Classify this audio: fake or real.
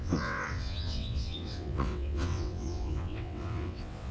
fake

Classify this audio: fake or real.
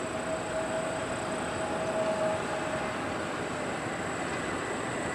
real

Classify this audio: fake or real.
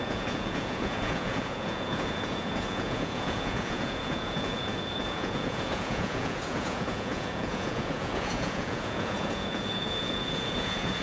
fake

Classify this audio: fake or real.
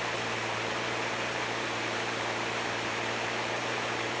fake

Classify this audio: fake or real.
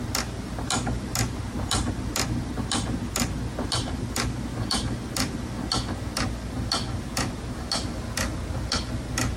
real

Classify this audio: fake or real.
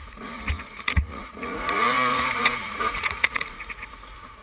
fake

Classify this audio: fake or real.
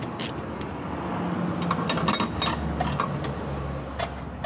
real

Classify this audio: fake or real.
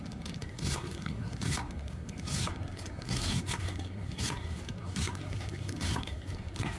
fake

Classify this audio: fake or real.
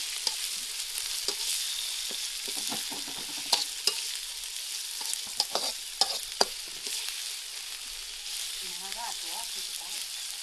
real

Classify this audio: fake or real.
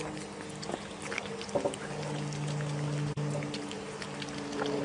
real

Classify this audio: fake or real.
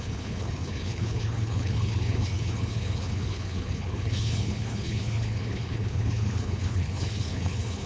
fake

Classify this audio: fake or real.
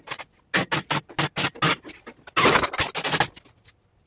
real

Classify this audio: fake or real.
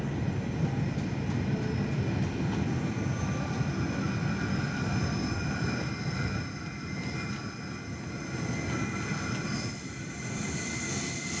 real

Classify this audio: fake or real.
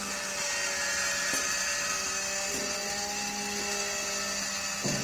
real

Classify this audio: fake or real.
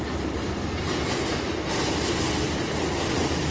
real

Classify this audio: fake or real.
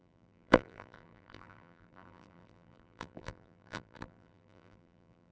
fake